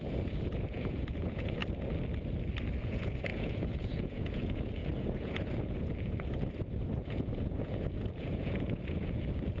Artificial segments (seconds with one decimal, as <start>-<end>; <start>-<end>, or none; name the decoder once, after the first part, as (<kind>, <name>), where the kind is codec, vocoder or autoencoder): 0.0-1.6 (vocoder, Vocos); 2.8-9.6